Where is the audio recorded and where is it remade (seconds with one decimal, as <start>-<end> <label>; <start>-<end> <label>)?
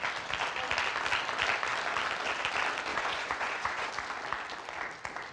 0.0-2.9 recorded; 2.9-3.9 remade; 3.9-5.3 recorded